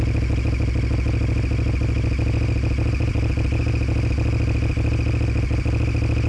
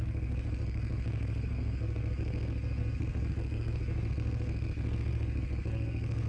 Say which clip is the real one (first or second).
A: first